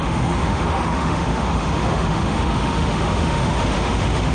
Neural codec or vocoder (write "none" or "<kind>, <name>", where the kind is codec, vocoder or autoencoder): autoencoder, DAC-VAE